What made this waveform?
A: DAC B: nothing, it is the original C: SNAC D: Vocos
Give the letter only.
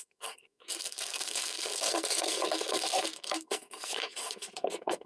C